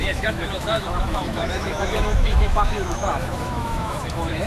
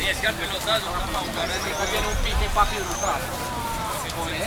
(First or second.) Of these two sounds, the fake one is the first